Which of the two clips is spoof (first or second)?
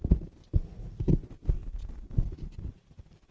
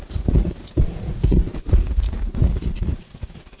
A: second